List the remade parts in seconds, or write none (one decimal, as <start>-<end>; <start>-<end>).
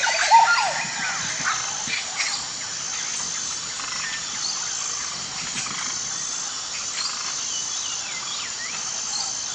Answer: none